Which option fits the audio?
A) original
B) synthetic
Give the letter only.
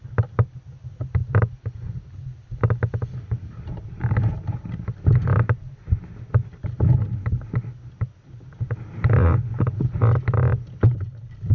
A